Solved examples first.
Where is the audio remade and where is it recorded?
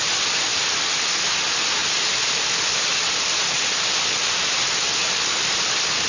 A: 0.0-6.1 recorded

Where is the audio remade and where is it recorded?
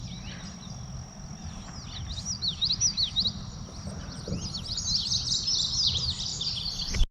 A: 0.0-7.1 recorded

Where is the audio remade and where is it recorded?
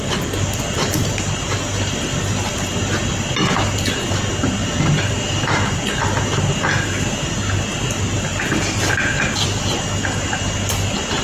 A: 0.0-4.6 recorded; 4.6-5.1 remade; 5.1-11.2 recorded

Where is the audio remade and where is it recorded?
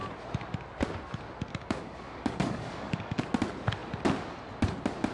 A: 0.0-1.5 recorded; 1.5-3.2 remade; 3.2-5.1 recorded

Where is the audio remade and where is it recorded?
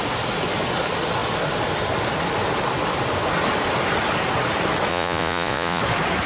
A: 0.0-4.9 recorded; 4.9-5.8 remade; 5.8-6.3 recorded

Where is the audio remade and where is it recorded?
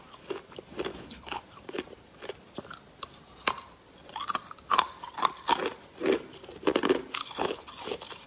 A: 0.0-0.9 recorded; 0.9-1.4 remade; 1.4-7.2 recorded; 7.2-7.7 remade; 7.7-8.3 recorded